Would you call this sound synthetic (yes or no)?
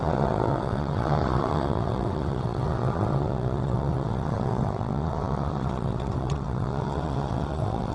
yes